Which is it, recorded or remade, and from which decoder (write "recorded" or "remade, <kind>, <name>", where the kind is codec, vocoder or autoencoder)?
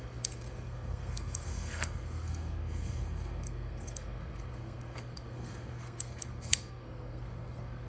remade, codec, SNAC